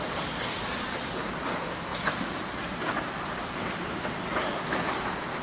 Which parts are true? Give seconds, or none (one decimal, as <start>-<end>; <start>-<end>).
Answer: 0.0-5.4